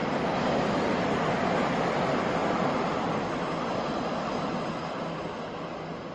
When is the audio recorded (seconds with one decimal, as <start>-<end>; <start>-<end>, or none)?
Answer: 0.0-6.1